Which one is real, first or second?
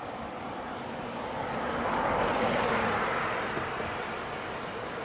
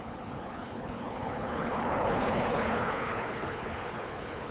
first